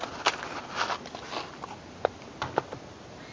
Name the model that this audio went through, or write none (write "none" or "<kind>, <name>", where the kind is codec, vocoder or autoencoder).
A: none